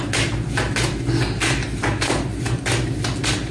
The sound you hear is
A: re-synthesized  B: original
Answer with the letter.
B